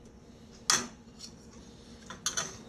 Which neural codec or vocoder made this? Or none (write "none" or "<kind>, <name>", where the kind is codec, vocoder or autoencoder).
none